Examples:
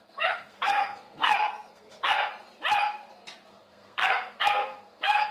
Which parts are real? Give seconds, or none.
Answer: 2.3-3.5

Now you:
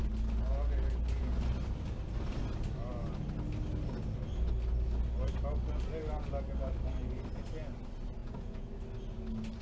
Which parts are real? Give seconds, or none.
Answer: 0.0-8.2; 8.7-9.6

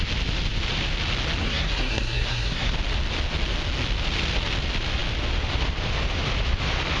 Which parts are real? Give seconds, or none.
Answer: 0.0-1.4; 2.7-7.0